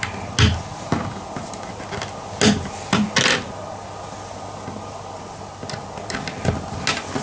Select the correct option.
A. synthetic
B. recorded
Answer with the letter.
B